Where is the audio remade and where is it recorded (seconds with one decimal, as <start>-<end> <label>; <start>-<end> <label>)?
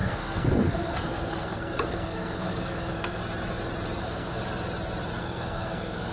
0.0-3.2 remade; 3.2-4.0 recorded; 4.0-4.4 remade; 4.4-5.2 recorded; 5.2-6.1 remade